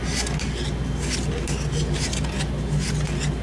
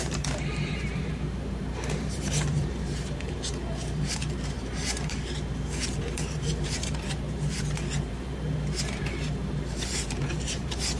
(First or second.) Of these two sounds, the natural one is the first